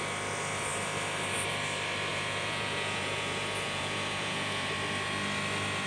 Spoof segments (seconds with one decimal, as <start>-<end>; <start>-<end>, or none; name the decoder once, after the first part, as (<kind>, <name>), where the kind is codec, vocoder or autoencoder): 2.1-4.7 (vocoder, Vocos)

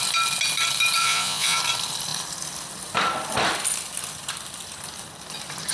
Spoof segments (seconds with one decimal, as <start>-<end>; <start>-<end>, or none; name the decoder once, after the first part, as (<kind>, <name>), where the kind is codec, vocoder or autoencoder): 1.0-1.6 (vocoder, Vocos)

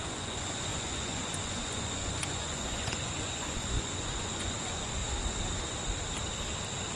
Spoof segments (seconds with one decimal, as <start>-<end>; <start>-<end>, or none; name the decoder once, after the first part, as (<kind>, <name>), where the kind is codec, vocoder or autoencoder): 0.0-5.0 (vocoder, Vocos)